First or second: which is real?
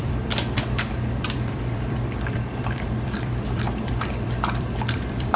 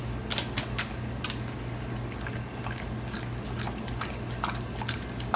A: second